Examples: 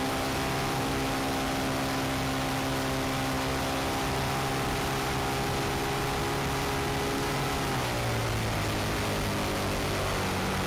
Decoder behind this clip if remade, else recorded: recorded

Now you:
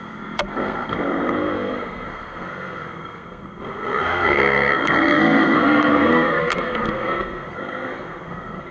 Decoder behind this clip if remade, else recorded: remade, codec, SNAC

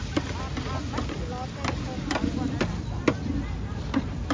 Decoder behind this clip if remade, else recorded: recorded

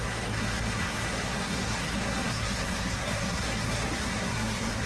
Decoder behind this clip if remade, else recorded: remade, codec, SNAC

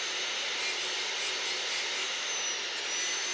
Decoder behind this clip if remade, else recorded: recorded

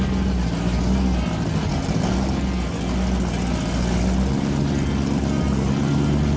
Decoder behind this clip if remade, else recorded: recorded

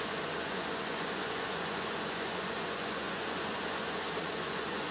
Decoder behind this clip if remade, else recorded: remade, vocoder, Vocos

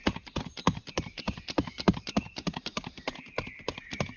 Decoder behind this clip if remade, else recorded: remade, vocoder, BigVGAN v2